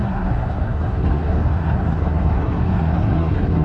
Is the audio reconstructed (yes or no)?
yes